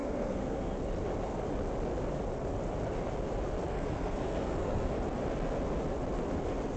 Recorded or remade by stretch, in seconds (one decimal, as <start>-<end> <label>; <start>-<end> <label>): 0.0-0.7 remade; 0.7-3.7 recorded; 3.7-4.9 remade; 4.9-6.8 recorded